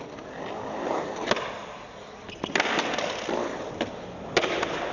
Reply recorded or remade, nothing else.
recorded